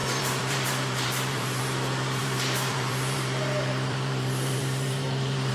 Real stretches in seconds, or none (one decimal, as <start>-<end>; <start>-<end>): 1.6-2.2